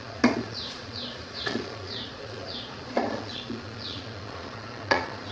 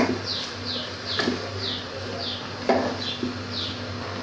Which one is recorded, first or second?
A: second